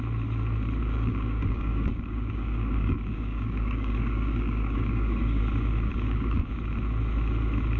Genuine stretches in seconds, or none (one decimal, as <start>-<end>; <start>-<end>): 0.0-0.8; 5.4-5.9; 6.5-7.8